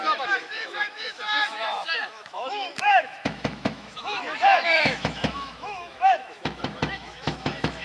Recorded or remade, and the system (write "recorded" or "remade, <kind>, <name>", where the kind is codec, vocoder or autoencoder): remade, autoencoder, DAC-VAE